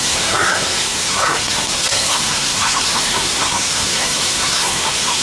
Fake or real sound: fake